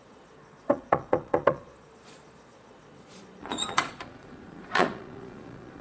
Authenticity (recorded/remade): remade